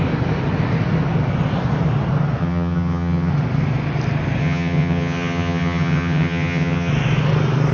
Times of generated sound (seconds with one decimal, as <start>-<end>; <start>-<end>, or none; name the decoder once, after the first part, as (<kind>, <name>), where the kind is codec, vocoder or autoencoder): 2.4-3.3 (vocoder, HiFi-GAN); 4.4-6.9

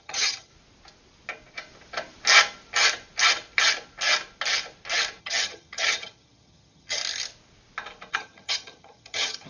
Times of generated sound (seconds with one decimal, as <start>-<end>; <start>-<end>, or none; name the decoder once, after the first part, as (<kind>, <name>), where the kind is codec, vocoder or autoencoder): 0.0-0.5 (vocoder, HiFi-GAN); 5.2-7.0; 8.1-9.5